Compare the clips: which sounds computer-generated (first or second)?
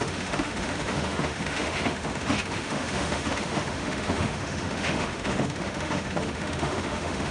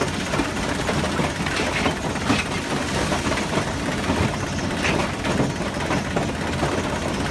first